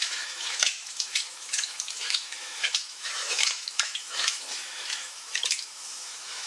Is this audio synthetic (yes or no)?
yes